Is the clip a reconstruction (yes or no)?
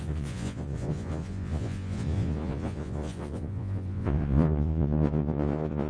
yes